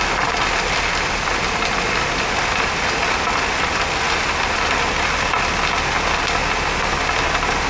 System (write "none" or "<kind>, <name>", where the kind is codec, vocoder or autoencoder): none